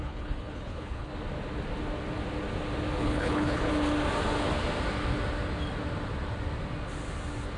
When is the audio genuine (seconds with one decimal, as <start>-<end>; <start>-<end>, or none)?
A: 1.1-3.0; 3.7-7.6